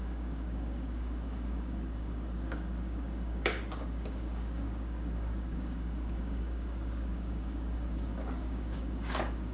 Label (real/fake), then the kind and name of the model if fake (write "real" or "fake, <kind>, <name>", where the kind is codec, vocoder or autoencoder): fake, codec, DAC